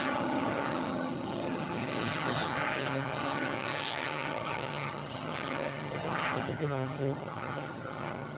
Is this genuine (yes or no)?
no